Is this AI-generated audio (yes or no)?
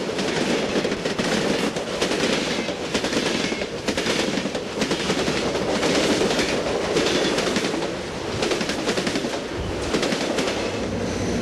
no